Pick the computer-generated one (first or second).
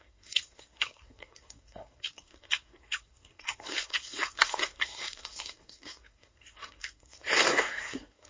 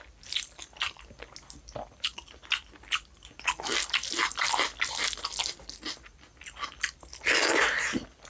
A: first